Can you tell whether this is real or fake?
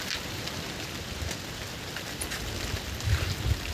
real